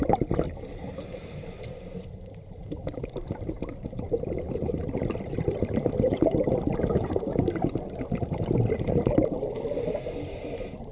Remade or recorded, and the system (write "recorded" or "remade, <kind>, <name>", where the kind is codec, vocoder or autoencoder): recorded